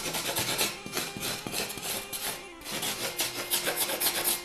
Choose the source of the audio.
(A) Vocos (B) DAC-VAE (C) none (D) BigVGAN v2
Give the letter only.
C